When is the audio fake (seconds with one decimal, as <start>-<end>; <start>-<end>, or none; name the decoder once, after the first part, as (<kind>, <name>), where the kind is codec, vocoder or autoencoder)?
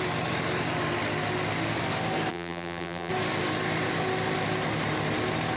2.3-3.1 (vocoder, BigVGAN v2)